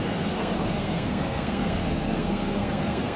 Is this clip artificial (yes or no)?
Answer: yes